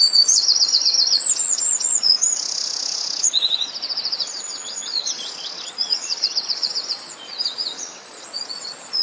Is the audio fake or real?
fake